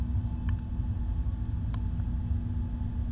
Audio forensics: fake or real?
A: real